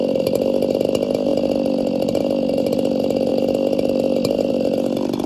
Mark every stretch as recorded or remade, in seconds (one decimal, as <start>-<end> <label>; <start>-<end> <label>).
0.0-5.3 recorded